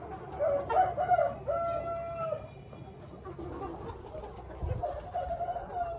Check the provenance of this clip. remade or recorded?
recorded